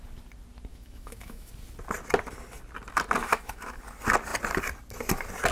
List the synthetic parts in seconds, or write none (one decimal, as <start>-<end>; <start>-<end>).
0.7-1.5; 3.2-3.8